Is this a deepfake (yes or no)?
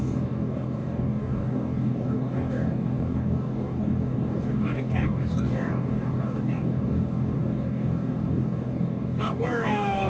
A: yes